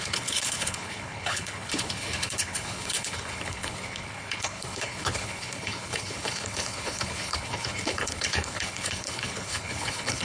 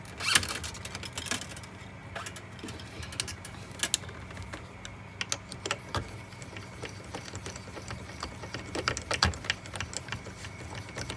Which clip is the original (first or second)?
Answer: second